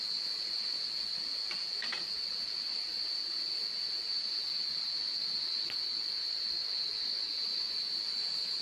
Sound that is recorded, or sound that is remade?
recorded